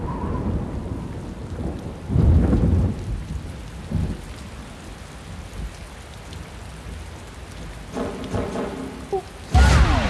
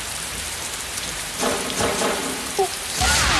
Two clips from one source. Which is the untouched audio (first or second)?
first